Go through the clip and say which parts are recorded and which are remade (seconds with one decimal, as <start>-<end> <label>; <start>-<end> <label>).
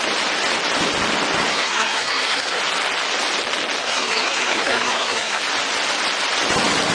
0.0-1.5 recorded; 1.5-2.6 remade; 2.6-3.8 recorded; 3.8-5.4 remade; 5.4-6.9 recorded